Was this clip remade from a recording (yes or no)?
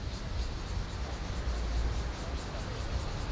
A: no